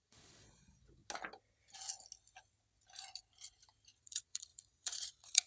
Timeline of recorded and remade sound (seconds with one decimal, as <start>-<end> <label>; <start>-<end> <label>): 0.0-1.0 remade; 1.0-4.0 recorded; 4.0-5.5 remade